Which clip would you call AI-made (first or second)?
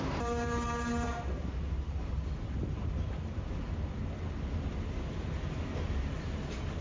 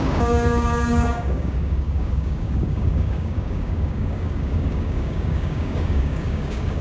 second